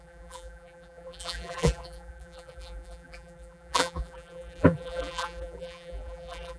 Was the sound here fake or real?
fake